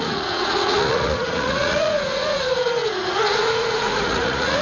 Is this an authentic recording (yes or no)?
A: no